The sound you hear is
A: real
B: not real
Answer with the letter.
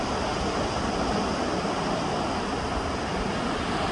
A